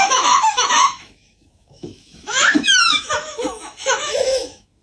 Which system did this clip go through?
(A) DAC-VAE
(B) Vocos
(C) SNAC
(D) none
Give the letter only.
A